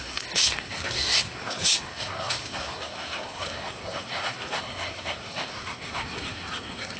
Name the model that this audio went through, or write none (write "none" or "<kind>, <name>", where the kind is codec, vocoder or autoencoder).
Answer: codec, SNAC